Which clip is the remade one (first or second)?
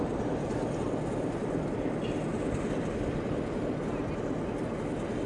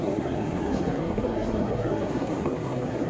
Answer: second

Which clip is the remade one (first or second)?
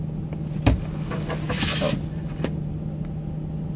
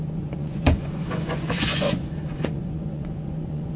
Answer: second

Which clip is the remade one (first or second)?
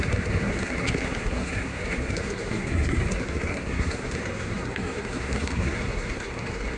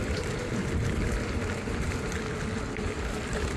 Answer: first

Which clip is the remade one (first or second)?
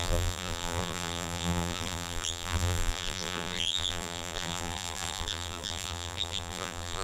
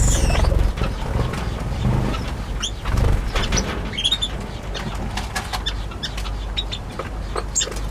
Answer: first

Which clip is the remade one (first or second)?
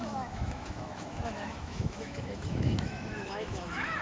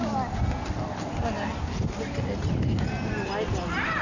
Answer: first